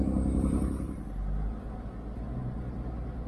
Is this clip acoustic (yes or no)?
yes